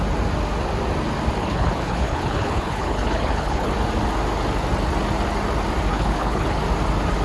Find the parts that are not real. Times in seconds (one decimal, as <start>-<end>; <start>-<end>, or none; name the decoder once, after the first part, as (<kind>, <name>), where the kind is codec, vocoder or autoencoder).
1.4-3.7 (codec, HILCodec); 5.9-6.6